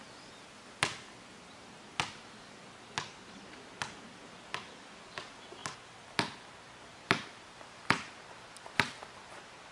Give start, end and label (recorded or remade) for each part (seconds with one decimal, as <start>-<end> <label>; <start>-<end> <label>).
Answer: 0.0-9.7 recorded